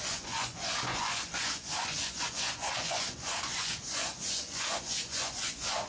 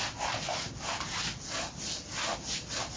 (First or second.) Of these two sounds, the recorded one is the second